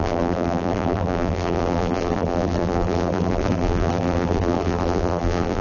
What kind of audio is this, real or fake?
fake